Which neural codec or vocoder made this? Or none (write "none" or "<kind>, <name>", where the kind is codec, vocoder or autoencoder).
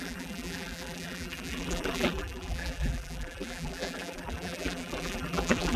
vocoder, BigVGAN v2